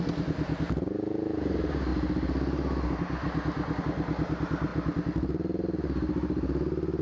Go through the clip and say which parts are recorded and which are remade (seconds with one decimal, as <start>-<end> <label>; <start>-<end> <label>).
0.0-7.0 recorded